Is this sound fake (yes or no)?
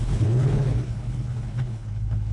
yes